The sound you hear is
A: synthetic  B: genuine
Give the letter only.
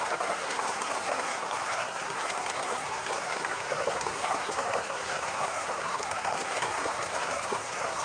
A